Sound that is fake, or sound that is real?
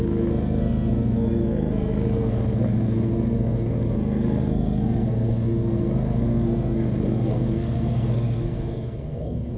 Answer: fake